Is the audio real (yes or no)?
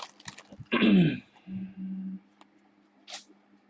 yes